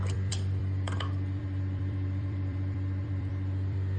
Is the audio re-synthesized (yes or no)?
yes